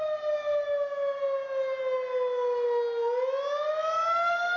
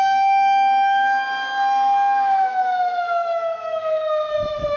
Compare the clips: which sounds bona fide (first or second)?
first